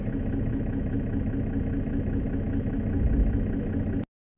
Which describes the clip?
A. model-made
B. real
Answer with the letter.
B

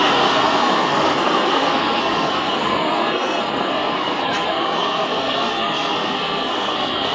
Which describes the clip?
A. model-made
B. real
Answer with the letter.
A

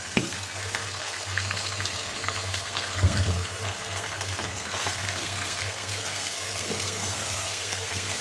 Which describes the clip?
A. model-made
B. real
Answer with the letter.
A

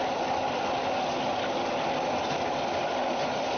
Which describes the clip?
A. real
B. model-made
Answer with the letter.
A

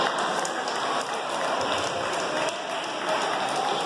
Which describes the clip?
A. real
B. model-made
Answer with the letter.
A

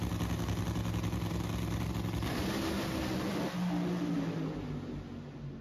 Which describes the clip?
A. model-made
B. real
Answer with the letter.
B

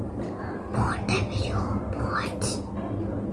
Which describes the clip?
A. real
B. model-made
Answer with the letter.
A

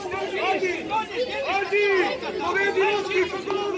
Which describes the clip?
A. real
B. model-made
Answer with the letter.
A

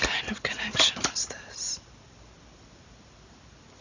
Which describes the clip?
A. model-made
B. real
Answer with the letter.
B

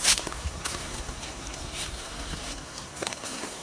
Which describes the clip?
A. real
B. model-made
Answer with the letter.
B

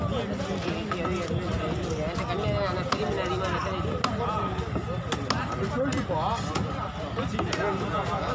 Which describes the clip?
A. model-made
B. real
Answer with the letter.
B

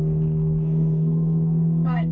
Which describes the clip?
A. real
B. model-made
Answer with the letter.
B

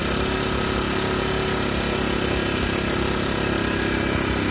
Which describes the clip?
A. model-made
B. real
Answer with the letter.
B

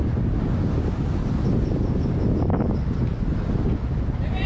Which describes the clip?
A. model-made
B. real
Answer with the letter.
B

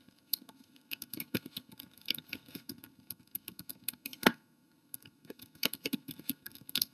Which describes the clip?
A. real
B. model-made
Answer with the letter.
B